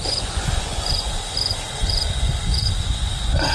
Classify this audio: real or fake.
fake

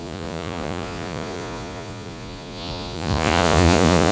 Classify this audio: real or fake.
fake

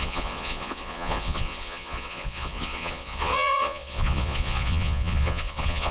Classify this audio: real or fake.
fake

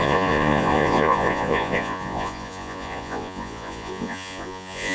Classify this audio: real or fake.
fake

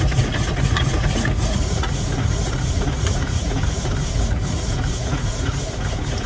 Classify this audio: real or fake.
fake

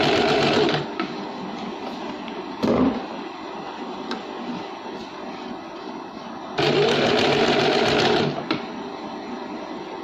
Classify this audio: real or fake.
real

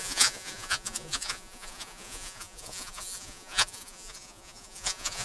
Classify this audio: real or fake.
fake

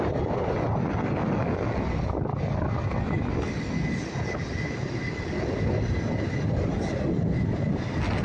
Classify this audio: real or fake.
real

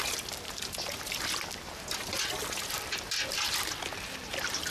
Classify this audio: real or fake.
real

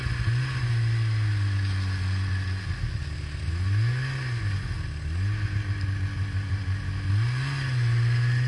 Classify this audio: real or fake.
real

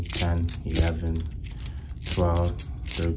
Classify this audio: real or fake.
real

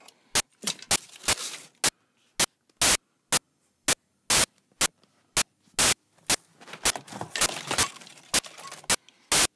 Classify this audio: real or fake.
real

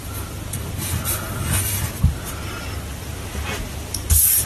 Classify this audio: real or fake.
real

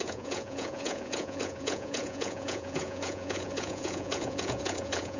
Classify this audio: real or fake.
fake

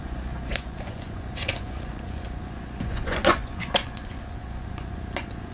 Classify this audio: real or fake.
fake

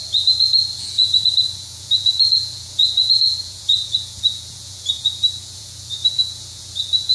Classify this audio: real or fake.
fake